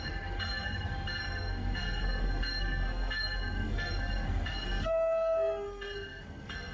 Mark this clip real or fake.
fake